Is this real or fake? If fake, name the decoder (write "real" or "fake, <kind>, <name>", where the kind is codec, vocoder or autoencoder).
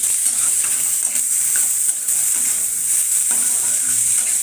fake, vocoder, BigVGAN v2